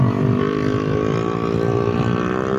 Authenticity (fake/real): real